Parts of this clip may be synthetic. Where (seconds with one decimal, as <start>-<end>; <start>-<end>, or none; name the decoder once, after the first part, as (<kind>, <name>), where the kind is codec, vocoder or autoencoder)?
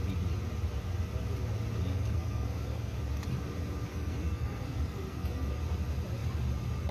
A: 1.9-3.0 (codec, SNAC); 3.9-5.6